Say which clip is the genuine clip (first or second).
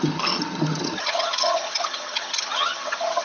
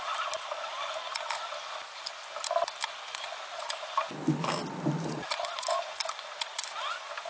second